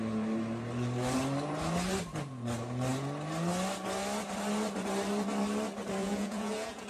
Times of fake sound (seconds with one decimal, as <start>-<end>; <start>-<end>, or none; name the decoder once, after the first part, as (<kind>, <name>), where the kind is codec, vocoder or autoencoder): 6.0-6.9 (vocoder, Vocos)

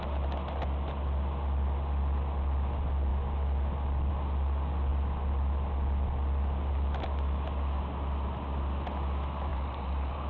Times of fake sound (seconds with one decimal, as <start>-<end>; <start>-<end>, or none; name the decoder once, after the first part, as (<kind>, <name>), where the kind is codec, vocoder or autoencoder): 9.5-10.3 (vocoder, BigVGAN v2)